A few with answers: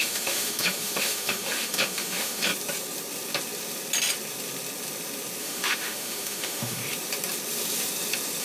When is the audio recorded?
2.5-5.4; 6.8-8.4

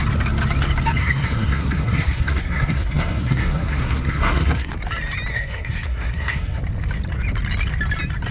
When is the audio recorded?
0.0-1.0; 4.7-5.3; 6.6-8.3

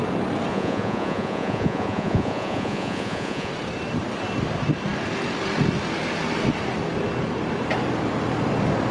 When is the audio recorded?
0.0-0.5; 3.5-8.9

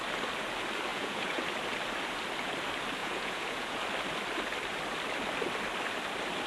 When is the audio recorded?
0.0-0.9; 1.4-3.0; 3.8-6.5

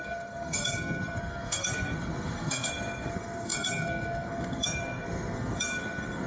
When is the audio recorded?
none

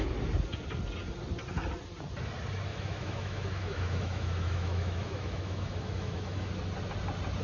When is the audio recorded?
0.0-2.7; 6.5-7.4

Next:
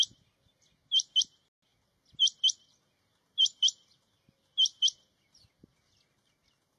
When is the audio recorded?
0.0-1.7; 5.8-6.8

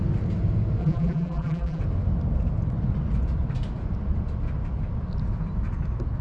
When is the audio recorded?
0.0-0.8; 1.8-6.2